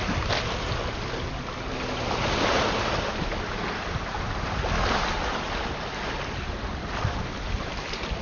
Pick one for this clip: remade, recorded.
recorded